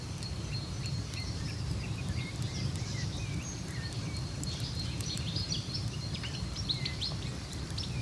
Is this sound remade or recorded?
remade